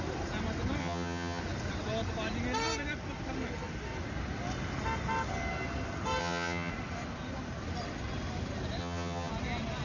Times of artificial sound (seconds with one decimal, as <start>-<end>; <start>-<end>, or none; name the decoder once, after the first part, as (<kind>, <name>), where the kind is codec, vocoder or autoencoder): 0.8-1.4 (vocoder, HiFi-GAN); 6.2-6.7; 8.8-9.3